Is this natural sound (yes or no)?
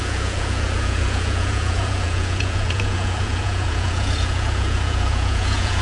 no